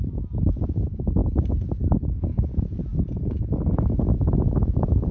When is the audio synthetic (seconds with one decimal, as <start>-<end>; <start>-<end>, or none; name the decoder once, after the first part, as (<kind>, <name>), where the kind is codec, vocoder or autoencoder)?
2.3-5.1 (vocoder, Vocos)